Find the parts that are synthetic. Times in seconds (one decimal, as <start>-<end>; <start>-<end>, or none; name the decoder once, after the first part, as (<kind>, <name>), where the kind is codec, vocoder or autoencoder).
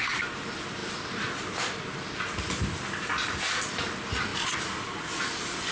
none